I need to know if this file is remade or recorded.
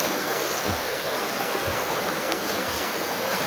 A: remade